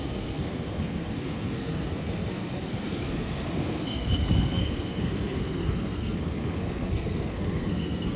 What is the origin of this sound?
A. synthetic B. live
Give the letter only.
A